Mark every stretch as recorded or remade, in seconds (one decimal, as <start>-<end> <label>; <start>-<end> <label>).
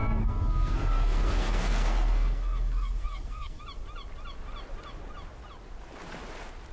0.0-3.6 remade; 3.6-6.7 recorded